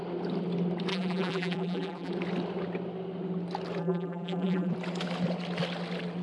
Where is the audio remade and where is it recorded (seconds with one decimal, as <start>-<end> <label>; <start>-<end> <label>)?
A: 0.0-0.9 recorded; 0.9-2.1 remade; 2.1-3.8 recorded; 3.8-4.7 remade; 4.7-6.2 recorded